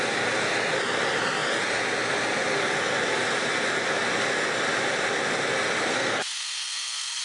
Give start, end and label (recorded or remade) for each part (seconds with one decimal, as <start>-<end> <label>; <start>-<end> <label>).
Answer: 0.0-5.9 recorded; 5.9-7.2 remade